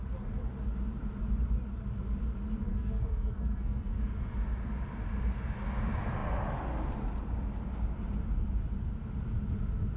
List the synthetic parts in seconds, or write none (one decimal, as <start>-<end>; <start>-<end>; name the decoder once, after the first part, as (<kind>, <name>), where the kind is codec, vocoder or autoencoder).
2.7-4.0 (codec, SNAC)